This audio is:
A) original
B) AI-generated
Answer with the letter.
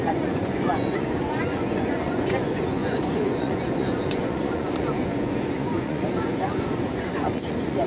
B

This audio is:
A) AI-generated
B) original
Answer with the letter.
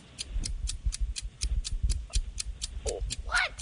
B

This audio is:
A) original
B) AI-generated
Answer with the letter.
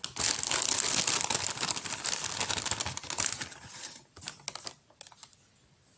A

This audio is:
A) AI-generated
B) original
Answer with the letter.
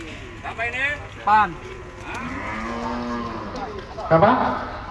B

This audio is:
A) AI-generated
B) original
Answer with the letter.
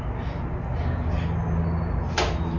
B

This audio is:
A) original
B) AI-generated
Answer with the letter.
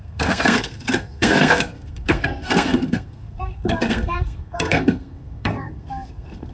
B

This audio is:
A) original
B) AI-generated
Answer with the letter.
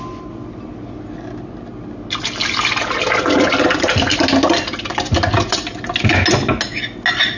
A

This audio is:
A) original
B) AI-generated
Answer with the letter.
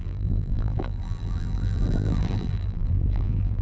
B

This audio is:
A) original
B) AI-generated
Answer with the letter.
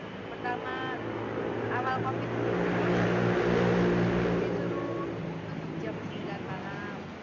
A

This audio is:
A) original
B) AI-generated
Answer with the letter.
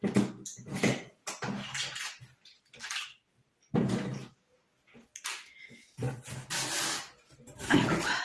A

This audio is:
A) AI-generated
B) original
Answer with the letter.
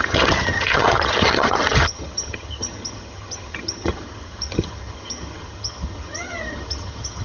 A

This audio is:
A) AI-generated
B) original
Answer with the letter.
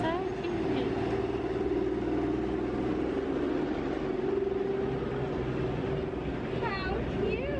B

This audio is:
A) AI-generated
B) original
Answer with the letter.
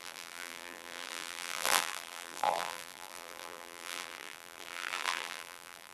A